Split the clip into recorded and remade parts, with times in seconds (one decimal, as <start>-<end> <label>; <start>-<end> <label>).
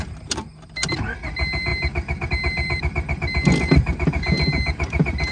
0.0-5.3 recorded